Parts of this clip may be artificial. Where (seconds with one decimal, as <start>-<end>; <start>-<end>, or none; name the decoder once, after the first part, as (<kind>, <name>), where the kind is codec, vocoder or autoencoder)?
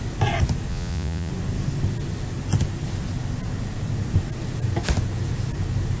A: 0.7-1.3 (vocoder, Vocos)